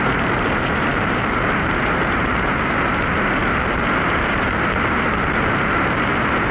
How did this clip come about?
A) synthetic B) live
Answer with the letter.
A